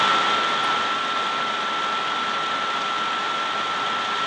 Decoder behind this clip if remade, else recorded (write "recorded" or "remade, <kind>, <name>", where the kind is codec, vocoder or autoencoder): remade, vocoder, BigVGAN v2